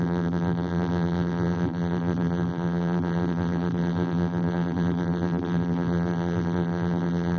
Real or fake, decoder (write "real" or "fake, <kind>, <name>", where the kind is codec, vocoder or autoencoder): fake, vocoder, BigVGAN v2